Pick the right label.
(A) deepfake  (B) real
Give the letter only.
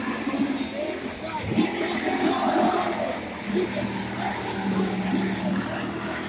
B